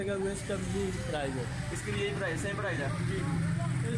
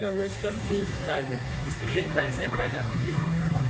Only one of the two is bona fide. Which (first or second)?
first